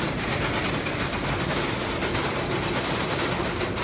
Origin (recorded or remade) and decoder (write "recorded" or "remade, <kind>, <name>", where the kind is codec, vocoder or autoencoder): recorded